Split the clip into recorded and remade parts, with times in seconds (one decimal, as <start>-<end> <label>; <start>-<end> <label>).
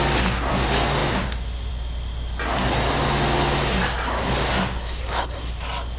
0.0-4.8 recorded; 4.8-5.5 remade; 5.5-6.0 recorded